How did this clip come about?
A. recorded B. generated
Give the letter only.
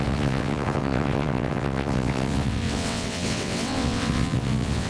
B